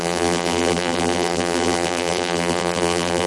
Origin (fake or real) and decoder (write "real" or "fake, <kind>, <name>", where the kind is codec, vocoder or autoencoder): fake, vocoder, BigVGAN v2